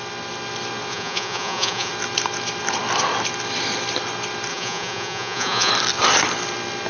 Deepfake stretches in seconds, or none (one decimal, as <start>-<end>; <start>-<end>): 0.9-1.9; 4.5-5.7